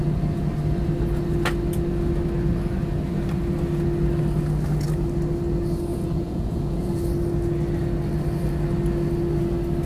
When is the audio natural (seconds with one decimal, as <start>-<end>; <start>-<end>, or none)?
0.0-5.9; 7.0-9.9